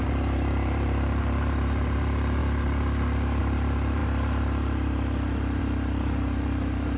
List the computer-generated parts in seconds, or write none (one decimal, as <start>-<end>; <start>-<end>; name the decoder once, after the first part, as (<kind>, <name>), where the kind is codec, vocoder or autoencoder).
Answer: 0.0-2.4 (vocoder, BigVGAN v2); 3.4-7.0